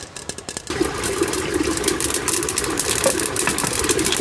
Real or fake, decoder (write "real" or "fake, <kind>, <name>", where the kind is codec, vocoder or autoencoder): real